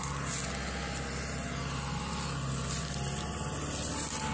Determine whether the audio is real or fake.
real